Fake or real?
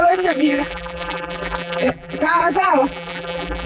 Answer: fake